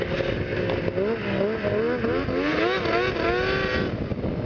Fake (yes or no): no